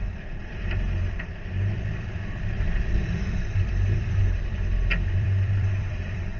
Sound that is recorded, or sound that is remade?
remade